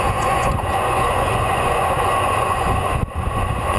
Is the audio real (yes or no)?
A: no